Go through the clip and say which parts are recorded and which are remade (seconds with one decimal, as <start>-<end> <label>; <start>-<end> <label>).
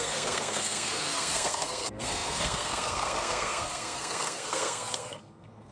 0.0-5.7 remade